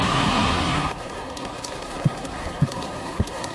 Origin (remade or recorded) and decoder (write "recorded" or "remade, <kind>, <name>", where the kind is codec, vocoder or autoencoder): remade, codec, SNAC